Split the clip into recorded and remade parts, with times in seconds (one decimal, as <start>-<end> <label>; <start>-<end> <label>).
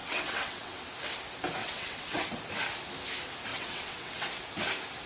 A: 0.0-0.8 remade; 0.8-1.6 recorded; 1.6-2.4 remade; 2.4-3.5 recorded; 3.5-4.3 remade; 4.3-5.1 recorded